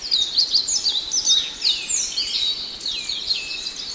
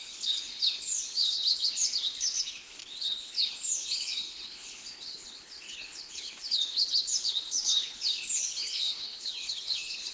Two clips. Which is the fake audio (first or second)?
second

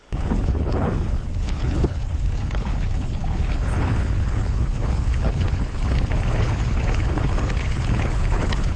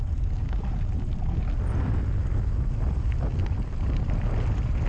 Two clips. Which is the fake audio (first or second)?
first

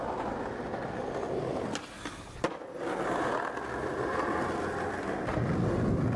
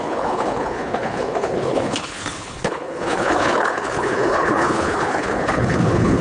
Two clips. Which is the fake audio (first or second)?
second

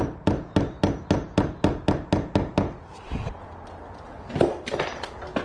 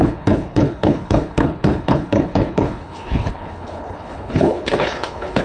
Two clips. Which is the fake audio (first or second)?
second